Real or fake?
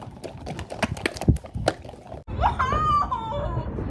real